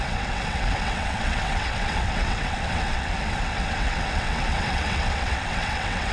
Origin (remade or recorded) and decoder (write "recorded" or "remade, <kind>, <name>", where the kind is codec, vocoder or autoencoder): remade, vocoder, WaveNeXt